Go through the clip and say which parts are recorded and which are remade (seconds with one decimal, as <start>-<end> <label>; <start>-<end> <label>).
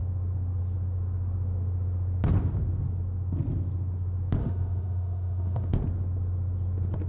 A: 0.0-4.4 recorded; 4.4-5.7 remade; 5.7-7.1 recorded